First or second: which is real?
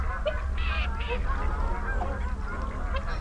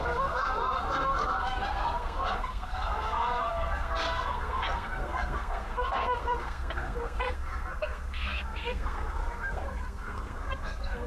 first